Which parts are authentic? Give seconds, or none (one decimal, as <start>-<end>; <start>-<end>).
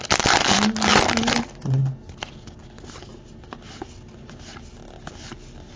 0.0-5.8